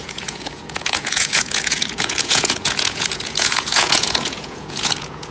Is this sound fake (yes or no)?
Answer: yes